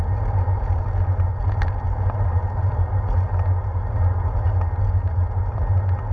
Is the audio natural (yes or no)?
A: yes